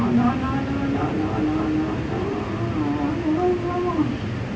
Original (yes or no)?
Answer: yes